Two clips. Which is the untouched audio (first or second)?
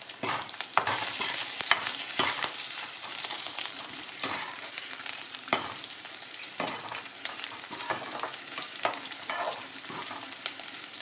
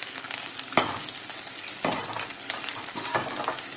second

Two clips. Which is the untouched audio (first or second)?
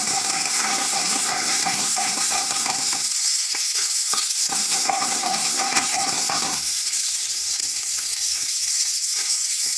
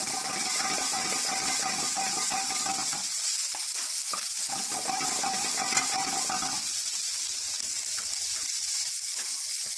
second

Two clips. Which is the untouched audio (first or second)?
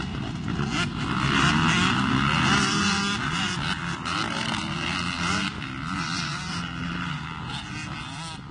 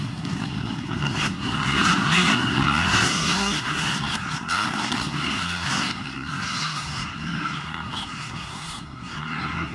first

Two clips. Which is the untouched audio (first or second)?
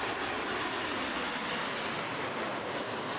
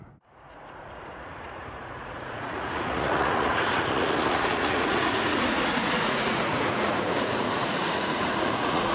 first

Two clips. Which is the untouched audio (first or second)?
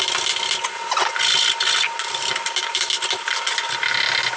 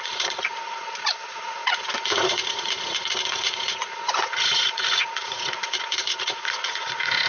first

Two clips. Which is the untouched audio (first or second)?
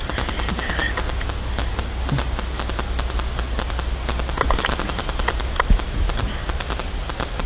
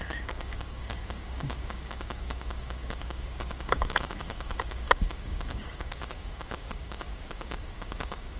first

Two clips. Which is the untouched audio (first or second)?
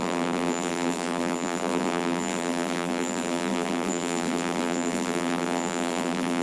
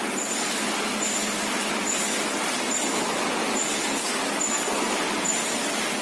second